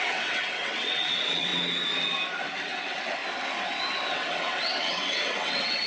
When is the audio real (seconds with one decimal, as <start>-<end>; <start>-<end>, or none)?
1.5-2.4; 3.2-4.1